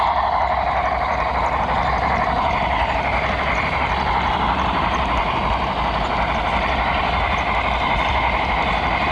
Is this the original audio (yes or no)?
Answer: no